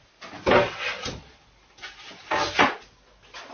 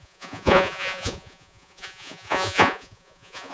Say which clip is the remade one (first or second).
second